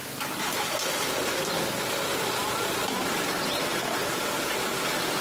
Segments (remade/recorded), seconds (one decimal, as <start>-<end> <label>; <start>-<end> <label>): 0.0-5.2 recorded